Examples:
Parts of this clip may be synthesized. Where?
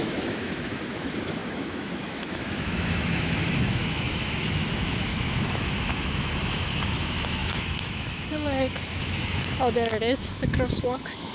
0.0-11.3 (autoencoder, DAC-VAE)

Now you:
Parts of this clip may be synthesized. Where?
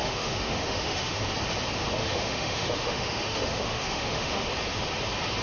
0.0-1.2 (autoencoder, DAC-VAE); 2.0-4.5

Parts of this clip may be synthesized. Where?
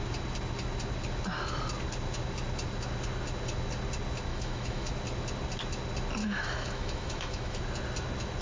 4.3-4.9 (autoencoder, DAC-VAE); 6.2-7.6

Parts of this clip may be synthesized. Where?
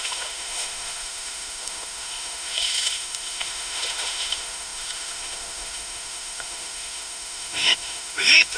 0.0-8.6 (autoencoder, DAC-VAE)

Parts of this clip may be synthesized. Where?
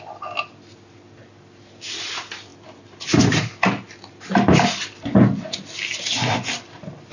none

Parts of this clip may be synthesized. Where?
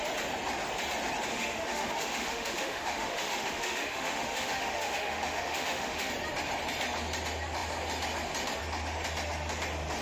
1.3-6.1 (autoencoder, DAC-VAE)